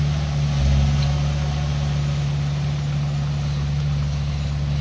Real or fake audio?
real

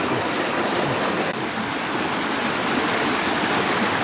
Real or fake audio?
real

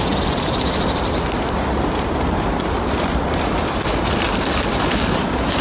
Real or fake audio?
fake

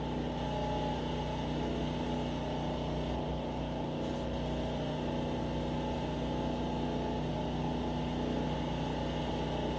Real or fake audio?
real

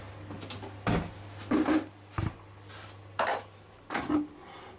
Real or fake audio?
real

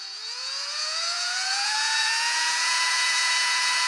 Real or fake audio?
fake